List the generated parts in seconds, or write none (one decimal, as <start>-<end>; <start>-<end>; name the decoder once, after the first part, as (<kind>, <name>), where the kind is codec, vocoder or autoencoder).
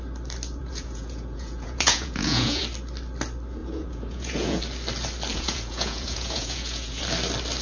0.6-2.6 (vocoder, Vocos); 3.6-4.6; 5.3-7.0